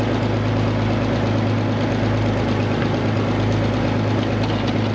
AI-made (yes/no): no